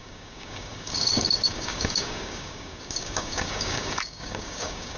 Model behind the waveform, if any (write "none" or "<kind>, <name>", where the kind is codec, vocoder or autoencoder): codec, DAC